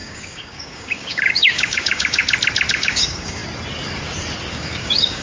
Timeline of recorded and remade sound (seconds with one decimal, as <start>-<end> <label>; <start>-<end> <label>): 0.0-2.2 remade; 2.2-2.7 recorded; 2.7-3.4 remade; 3.4-4.5 recorded; 4.5-5.2 remade